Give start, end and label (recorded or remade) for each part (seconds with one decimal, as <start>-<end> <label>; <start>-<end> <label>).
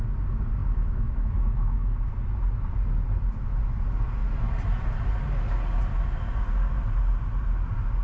0.0-0.6 recorded; 0.6-1.9 remade; 1.9-8.0 recorded